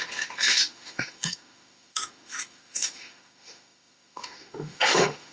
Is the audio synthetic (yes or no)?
yes